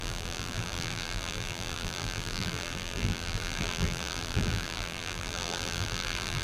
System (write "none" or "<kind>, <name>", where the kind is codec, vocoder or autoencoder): vocoder, BigVGAN v2